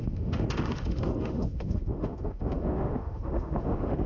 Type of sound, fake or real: fake